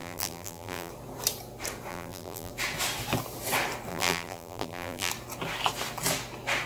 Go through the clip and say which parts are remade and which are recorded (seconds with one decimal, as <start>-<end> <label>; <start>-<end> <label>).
0.0-0.9 remade; 0.9-1.9 recorded; 1.9-2.5 remade; 2.5-3.9 recorded; 3.9-5.1 remade; 5.1-6.7 recorded